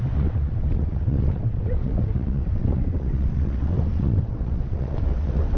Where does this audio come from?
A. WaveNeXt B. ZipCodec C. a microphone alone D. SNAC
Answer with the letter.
A